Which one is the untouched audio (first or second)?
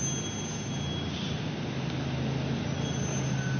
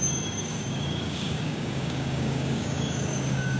first